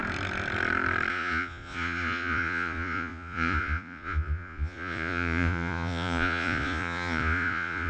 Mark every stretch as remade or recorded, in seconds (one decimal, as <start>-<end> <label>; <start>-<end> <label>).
0.0-1.1 recorded; 1.1-7.9 remade